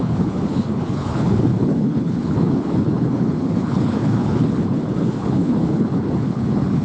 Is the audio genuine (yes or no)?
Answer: no